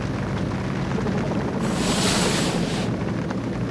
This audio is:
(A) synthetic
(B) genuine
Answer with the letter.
B